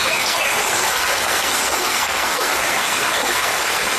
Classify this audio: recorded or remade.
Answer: remade